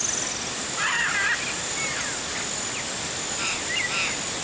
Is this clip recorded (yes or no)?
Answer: yes